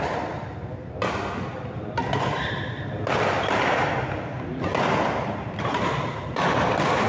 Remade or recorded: recorded